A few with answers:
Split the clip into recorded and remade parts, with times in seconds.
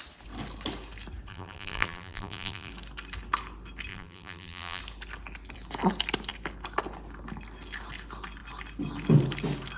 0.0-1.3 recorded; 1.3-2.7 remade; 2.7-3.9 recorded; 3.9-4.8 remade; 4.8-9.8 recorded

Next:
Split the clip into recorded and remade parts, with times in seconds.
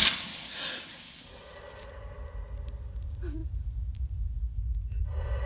0.0-5.5 recorded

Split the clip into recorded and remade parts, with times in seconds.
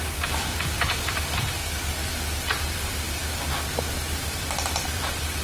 0.0-1.6 remade; 1.6-2.3 recorded; 2.3-3.2 remade; 3.2-4.2 recorded; 4.2-5.4 remade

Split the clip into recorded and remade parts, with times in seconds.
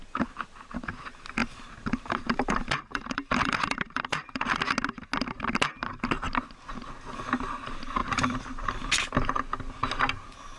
0.0-1.4 recorded; 1.4-4.6 remade; 4.6-8.0 recorded; 8.0-8.9 remade; 8.9-10.6 recorded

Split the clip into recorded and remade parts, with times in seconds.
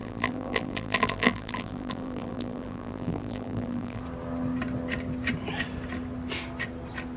0.0-4.0 remade; 4.0-7.2 recorded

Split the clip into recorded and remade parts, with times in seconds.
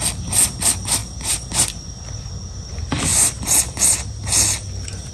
0.0-1.0 recorded; 1.0-2.3 remade; 2.3-3.1 recorded; 3.1-3.8 remade; 3.8-5.1 recorded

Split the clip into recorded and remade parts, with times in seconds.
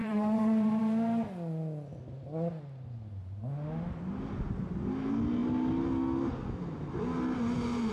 0.0-0.8 remade; 0.8-7.9 recorded